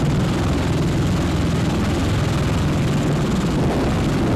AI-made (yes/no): no